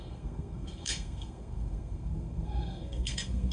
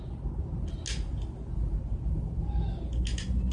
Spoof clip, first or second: first